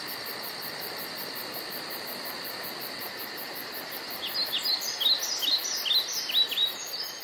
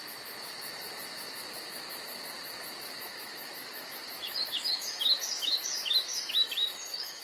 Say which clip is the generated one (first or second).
second